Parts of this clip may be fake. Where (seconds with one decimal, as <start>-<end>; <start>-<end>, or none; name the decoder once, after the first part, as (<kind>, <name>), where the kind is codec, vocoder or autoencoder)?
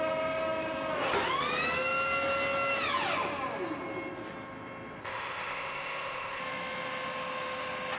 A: 5.0-6.4 (codec, ZipCodec)